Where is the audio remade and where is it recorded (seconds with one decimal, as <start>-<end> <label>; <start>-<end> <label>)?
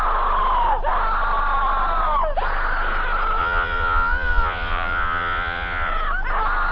0.0-3.4 recorded; 3.4-5.9 remade; 5.9-6.7 recorded